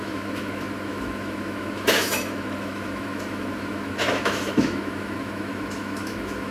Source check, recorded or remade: remade